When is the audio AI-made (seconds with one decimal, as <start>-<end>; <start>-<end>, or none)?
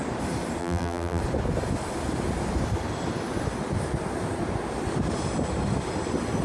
0.6-1.2